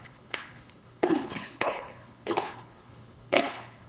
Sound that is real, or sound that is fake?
fake